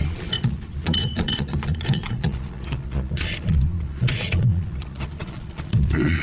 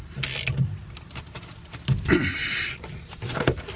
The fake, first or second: first